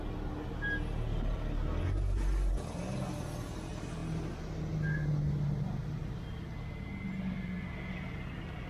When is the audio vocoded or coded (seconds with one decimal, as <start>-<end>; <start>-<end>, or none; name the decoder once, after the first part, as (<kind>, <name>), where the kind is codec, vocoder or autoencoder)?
none